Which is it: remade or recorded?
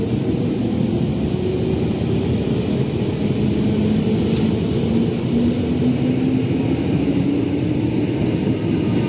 recorded